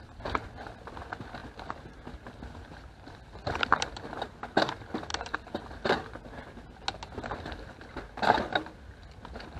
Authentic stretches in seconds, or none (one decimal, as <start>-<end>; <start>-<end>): 0.0-9.6